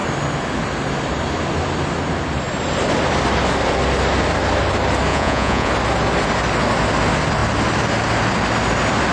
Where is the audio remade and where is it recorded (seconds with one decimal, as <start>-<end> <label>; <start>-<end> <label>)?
0.0-5.1 recorded; 5.1-5.7 remade; 5.7-9.1 recorded